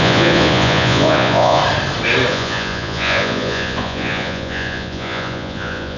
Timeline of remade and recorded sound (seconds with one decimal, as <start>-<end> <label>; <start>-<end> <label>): 0.0-1.6 remade; 1.6-2.3 recorded; 2.3-6.0 remade